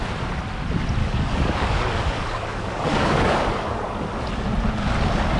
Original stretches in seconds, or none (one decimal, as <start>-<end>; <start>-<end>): 0.0-1.0; 4.2-5.4